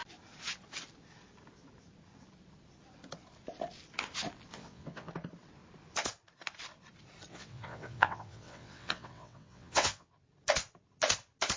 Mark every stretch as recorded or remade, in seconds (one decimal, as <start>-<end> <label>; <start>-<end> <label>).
0.0-4.5 recorded; 4.5-5.1 remade; 5.1-7.3 recorded; 7.3-10.1 remade; 10.1-11.6 recorded